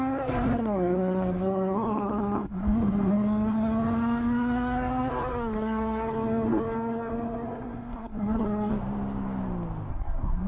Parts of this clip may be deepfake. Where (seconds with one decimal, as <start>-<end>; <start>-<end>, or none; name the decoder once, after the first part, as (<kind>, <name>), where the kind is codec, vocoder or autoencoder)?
0.0-8.7 (codec, SNAC); 9.9-10.5